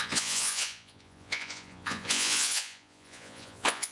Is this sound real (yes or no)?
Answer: no